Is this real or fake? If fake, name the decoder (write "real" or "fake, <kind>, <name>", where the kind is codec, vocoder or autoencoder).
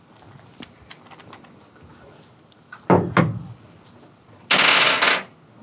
real